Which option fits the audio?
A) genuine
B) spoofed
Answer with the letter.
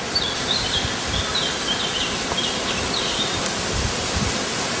A